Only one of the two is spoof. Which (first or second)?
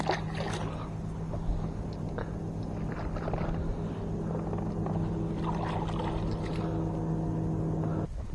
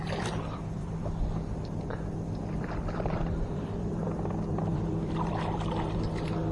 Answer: second